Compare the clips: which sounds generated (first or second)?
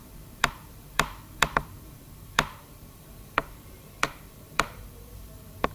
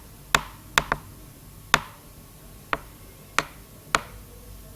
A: first